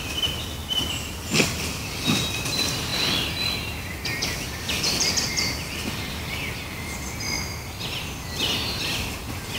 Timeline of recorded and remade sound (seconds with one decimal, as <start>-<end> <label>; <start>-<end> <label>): 0.0-2.9 remade; 2.9-4.8 recorded; 4.8-9.6 remade